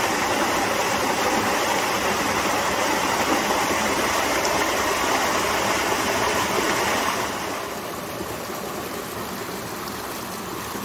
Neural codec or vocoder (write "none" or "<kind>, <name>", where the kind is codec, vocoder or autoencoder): none